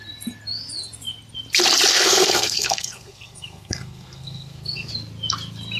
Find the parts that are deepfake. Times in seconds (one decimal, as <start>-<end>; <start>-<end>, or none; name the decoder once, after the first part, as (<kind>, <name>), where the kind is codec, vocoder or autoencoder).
1.9-4.9 (codec, SNAC)